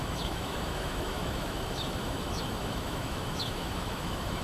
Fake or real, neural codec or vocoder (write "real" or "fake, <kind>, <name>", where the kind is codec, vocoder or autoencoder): fake, autoencoder, DAC-VAE